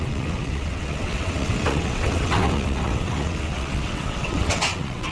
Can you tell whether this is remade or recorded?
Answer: remade